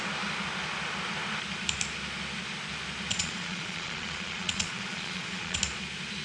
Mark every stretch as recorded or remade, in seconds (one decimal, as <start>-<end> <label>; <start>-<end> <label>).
0.0-3.1 recorded; 3.1-5.6 remade; 5.6-6.2 recorded